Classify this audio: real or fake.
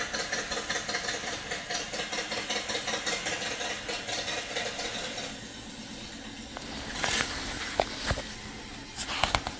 real